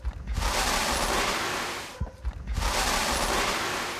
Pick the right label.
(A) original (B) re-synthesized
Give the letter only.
A